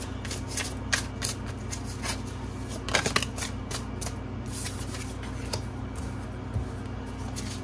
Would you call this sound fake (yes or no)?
no